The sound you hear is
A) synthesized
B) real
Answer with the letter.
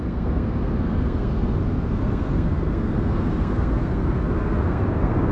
A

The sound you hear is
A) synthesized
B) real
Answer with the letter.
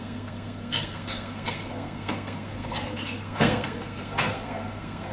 A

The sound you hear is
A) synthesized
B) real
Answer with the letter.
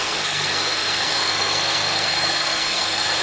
A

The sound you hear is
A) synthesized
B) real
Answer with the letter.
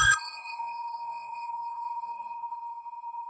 A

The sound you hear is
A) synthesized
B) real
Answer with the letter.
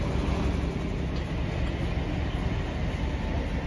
B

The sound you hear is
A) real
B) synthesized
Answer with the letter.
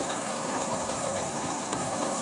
B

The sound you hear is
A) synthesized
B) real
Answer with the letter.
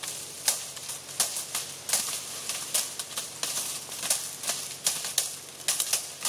B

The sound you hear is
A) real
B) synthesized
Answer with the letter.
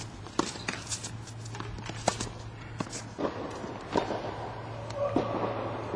A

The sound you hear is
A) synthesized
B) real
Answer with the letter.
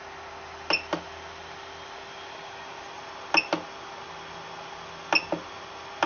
B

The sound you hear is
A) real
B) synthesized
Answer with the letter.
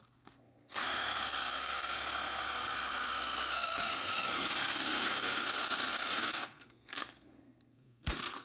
B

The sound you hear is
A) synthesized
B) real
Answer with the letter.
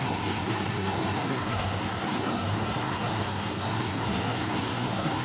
A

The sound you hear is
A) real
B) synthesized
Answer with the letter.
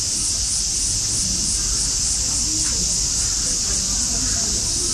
A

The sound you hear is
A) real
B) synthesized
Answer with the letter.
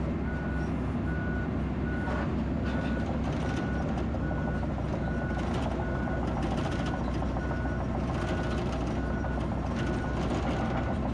A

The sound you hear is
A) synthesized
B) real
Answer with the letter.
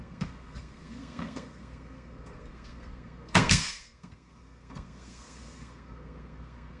A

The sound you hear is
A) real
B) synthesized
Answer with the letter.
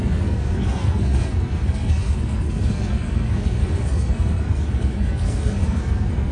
B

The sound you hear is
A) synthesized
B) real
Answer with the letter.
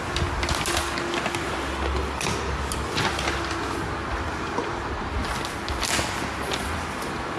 B